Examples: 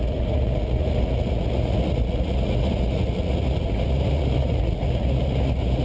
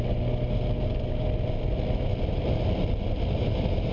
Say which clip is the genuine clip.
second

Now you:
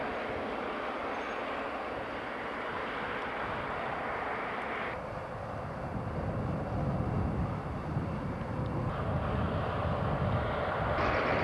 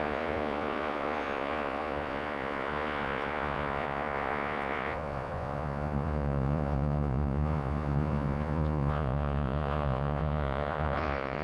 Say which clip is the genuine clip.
first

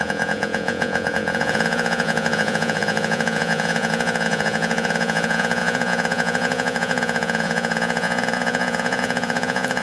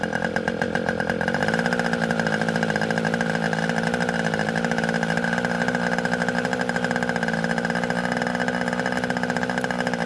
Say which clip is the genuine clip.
second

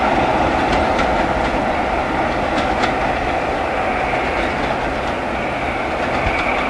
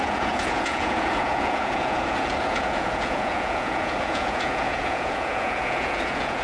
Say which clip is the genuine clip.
first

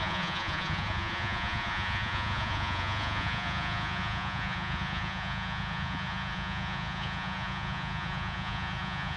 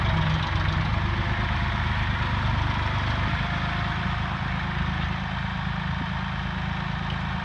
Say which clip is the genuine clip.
second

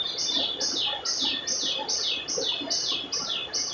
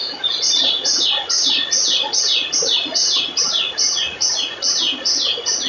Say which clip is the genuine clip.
first